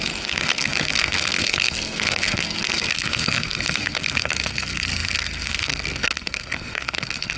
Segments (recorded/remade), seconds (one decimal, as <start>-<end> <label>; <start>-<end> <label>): 0.0-7.4 remade